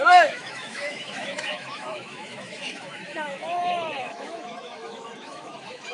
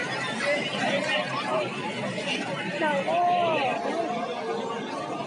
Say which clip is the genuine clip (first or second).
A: second